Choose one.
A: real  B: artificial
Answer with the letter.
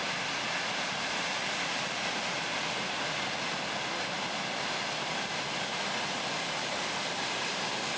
A